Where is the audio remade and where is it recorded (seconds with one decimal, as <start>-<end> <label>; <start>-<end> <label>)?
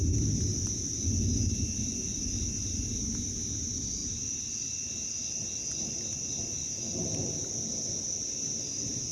0.0-9.1 recorded